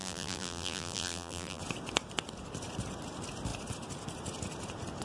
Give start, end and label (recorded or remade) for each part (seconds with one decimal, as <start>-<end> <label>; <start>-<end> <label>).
0.0-1.6 remade; 1.6-5.0 recorded

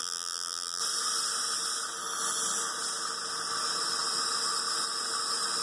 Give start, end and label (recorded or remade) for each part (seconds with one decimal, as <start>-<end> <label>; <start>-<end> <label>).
0.0-0.8 remade; 0.8-5.6 recorded